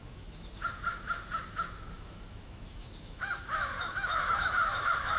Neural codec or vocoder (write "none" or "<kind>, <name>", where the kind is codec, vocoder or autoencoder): autoencoder, DAC-VAE